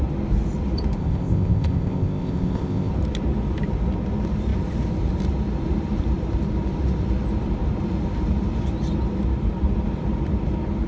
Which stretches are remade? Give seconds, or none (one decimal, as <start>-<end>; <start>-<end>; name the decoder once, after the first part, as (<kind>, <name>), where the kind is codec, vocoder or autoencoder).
1.0-2.9 (codec, ZipCodec)